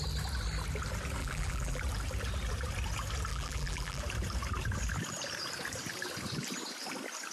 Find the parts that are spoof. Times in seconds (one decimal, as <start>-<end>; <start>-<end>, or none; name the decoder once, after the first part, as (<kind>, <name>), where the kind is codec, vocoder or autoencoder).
1.2-1.8 (vocoder, BigVGAN v2); 3.3-4.0